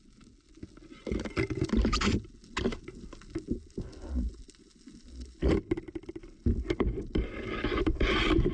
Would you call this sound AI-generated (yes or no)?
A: no